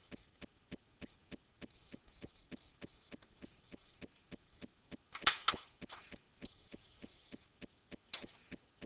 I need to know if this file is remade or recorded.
recorded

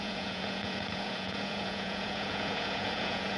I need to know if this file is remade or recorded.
remade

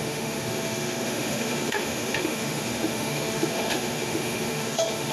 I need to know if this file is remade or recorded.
remade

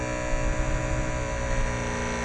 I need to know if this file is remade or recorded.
recorded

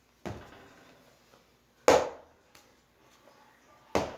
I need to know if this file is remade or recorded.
recorded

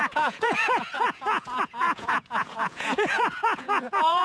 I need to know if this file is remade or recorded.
remade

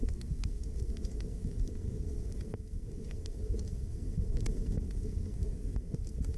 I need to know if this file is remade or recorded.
remade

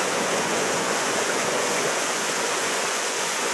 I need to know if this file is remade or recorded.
remade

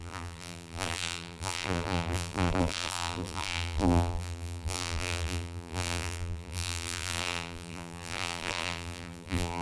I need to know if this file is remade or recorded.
remade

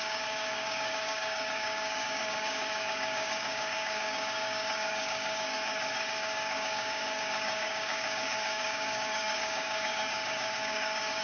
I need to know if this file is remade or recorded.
remade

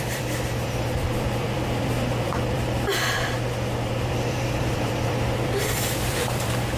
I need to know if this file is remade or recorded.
remade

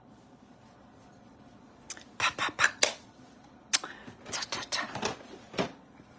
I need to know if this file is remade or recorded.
recorded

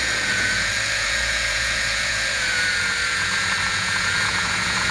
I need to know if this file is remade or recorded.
remade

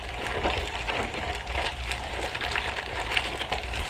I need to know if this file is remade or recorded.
remade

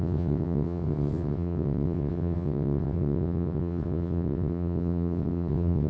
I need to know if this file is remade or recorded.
remade